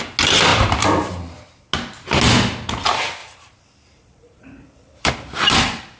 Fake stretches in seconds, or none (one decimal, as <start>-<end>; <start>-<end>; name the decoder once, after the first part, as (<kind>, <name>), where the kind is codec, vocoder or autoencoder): 3.2-5.1 (vocoder, BigVGAN v2)